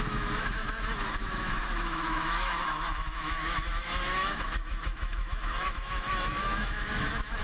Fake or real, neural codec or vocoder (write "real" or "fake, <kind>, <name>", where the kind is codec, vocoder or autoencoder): fake, autoencoder, DAC-VAE